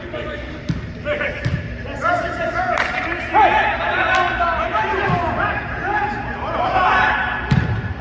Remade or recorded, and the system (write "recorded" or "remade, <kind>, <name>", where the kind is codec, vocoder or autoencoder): recorded